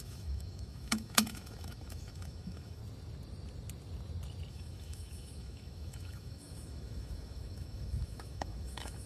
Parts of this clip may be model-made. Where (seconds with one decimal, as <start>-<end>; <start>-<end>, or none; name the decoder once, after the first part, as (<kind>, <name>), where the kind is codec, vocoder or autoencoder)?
0.0-2.8 (autoencoder, DAC-VAE); 4.5-9.1